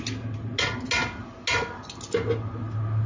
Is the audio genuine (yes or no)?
yes